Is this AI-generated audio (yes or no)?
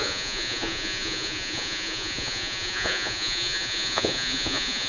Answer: yes